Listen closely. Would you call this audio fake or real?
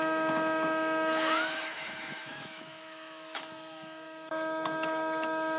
fake